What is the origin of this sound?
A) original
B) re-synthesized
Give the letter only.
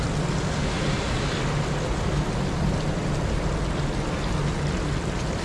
A